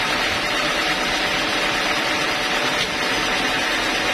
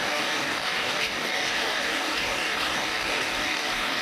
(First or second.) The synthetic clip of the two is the second